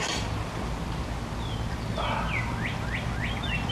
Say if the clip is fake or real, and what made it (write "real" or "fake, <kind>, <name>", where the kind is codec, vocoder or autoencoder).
real